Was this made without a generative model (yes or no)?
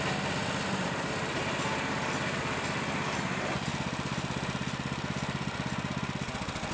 yes